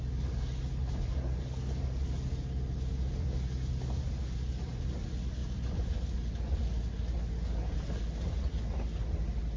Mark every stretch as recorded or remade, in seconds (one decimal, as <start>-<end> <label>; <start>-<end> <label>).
0.0-9.6 recorded